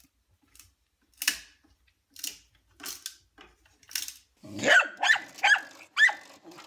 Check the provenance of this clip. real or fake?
real